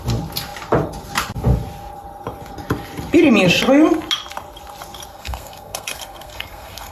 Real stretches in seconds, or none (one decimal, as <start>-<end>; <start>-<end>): 0.0-5.1